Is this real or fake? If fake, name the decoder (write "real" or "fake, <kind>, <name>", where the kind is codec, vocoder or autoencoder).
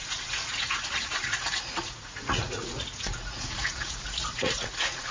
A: fake, vocoder, Vocos